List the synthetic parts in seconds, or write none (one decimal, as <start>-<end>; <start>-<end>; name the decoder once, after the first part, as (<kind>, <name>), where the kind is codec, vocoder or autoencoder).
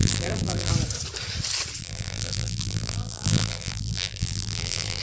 0.0-0.7 (vocoder, BigVGAN v2); 1.8-5.0